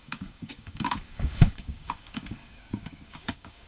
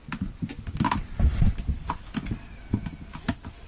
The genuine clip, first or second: second